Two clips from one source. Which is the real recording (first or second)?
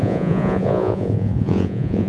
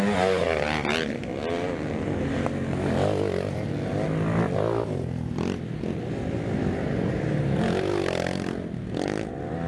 second